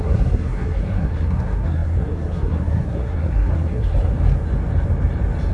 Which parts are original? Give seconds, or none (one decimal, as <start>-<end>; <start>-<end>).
4.1-5.5

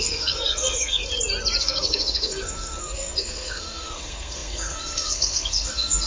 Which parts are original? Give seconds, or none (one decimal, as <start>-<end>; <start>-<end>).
1.0-1.6

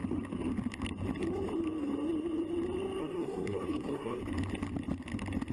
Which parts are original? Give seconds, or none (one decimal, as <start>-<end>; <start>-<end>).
0.0-3.0; 4.2-5.5

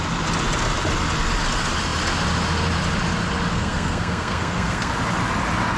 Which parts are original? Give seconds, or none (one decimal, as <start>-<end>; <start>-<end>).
0.0-3.5; 4.9-5.8

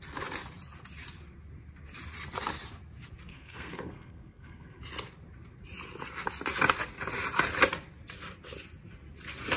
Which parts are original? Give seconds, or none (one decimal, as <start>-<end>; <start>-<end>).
0.0-3.3; 4.8-9.6

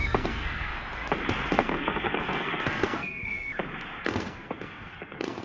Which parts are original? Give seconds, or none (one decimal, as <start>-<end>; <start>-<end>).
0.7-1.5; 3.5-4.0

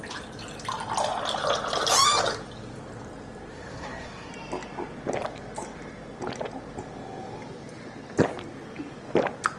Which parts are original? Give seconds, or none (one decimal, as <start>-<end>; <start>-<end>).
0.0-3.5; 4.3-9.6

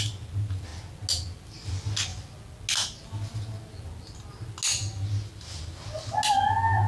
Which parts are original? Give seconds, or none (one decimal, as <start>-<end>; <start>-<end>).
0.0-6.9